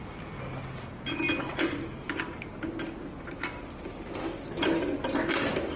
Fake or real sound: real